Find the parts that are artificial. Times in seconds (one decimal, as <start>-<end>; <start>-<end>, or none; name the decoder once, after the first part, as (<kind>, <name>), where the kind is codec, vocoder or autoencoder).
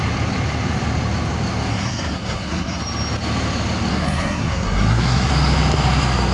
1.7-2.8 (codec, SNAC); 3.9-5.3